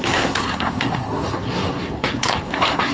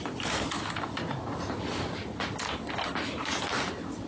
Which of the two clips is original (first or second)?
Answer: second